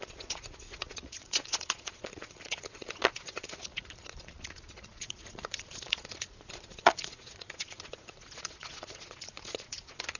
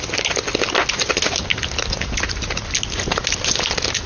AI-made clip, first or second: first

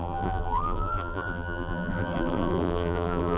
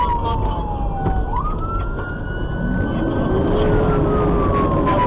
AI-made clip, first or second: first